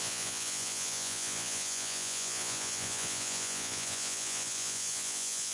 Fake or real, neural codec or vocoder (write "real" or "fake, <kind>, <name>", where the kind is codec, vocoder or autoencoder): fake, vocoder, Vocos